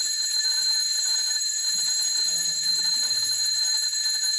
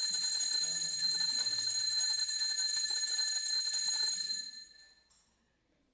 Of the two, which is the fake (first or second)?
first